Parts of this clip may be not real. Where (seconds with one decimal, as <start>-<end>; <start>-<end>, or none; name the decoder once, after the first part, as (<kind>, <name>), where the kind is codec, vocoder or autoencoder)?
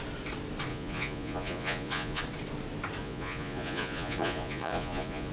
0.7-2.2 (vocoder, Vocos); 3.0-5.3